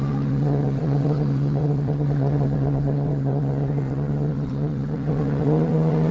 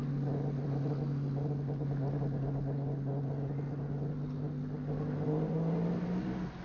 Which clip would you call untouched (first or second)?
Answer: second